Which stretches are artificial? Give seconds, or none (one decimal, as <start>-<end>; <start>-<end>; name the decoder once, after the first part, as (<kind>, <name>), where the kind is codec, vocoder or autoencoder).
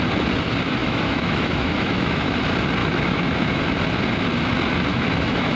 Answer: 0.8-2.4 (autoencoder, DAC-VAE); 2.8-3.6; 4.9-5.6